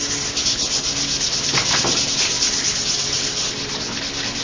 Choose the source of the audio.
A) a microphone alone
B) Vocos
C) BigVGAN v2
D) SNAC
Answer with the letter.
A